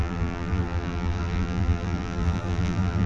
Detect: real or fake fake